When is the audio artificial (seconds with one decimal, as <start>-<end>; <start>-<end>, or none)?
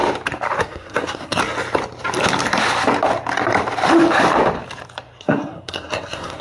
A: 0.6-1.4; 5.2-6.4